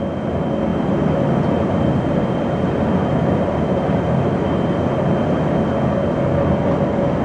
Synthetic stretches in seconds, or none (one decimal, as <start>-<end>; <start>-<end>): 0.7-5.0